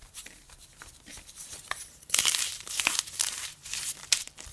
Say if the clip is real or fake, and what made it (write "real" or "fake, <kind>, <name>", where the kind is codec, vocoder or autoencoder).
fake, vocoder, BigVGAN v2